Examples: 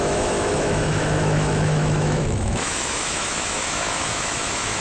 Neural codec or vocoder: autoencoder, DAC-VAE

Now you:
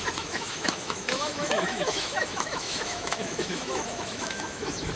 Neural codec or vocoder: autoencoder, DAC-VAE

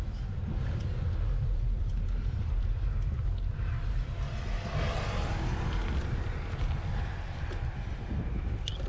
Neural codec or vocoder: none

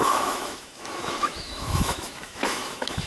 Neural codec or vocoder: autoencoder, DAC-VAE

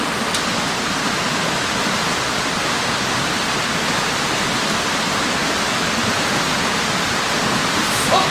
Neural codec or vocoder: none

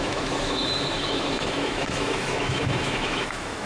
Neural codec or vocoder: autoencoder, DAC-VAE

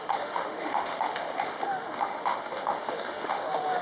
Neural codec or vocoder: autoencoder, DAC-VAE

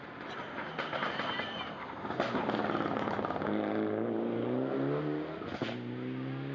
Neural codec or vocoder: none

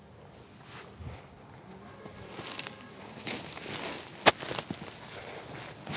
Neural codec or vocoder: none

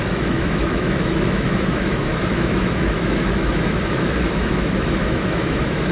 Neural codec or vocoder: autoencoder, DAC-VAE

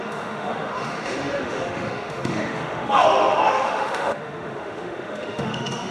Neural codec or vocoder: autoencoder, DAC-VAE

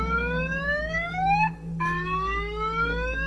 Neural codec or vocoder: autoencoder, DAC-VAE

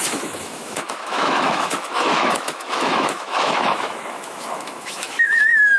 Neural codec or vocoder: autoencoder, DAC-VAE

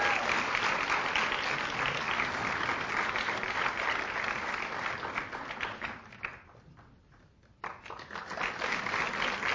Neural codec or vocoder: none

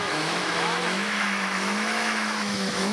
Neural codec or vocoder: autoencoder, DAC-VAE